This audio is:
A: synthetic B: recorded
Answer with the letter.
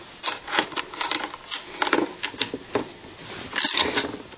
B